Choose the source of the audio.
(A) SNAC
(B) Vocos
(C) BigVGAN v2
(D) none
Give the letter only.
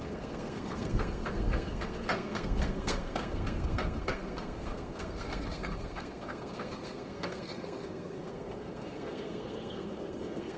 A